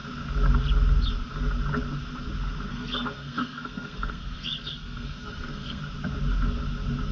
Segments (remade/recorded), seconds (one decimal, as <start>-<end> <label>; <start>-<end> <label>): 0.0-2.7 recorded; 2.7-5.8 remade; 5.8-7.1 recorded